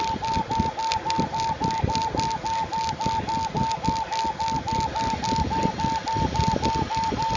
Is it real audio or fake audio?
real